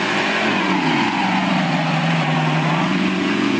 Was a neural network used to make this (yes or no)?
yes